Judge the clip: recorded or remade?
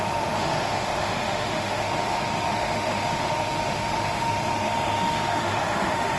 remade